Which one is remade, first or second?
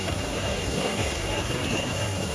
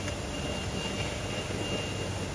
first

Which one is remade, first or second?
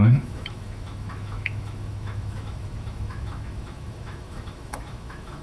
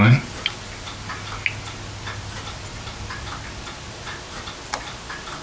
first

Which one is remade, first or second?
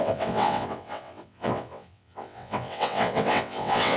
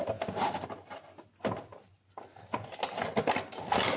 first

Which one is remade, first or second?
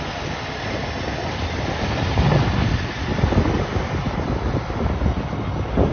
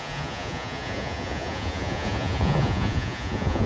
second